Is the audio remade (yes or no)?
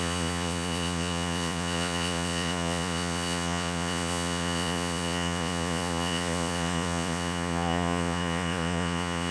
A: yes